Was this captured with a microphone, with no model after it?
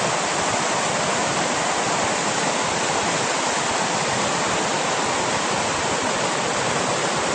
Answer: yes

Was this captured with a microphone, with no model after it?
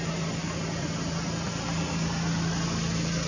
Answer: yes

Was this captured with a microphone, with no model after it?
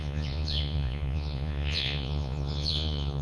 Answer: no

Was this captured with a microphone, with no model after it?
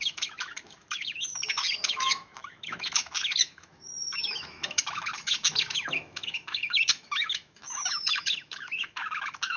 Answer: no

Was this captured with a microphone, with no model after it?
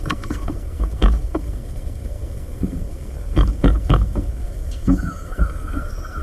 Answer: no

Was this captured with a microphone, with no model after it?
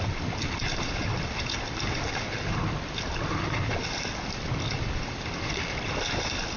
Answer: yes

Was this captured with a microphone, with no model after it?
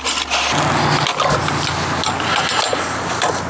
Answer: yes